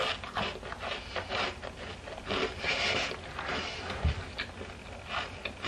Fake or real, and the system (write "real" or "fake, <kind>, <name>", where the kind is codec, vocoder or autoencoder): real